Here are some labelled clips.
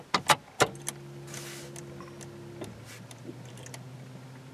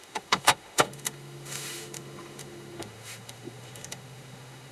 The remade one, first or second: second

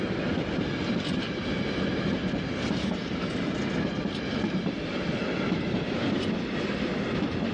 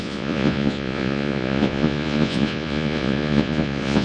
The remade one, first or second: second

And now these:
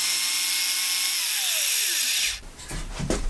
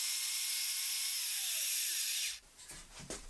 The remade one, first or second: second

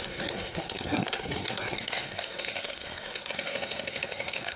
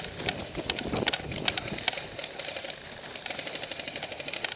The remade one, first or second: first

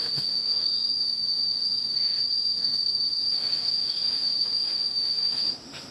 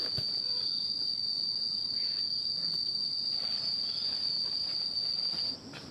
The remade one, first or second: first